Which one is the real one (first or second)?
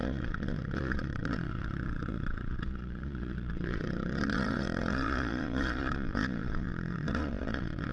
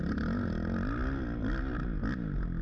second